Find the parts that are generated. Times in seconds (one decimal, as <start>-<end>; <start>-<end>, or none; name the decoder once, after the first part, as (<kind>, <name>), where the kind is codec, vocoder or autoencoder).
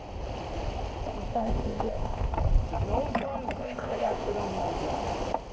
1.3-2.3 (codec, ZipCodec); 3.6-4.3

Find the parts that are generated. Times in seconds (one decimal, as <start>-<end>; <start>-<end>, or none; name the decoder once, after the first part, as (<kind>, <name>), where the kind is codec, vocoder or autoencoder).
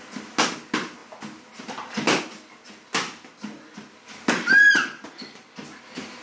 none